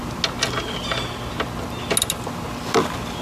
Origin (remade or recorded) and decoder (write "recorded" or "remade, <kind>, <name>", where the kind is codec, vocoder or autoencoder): recorded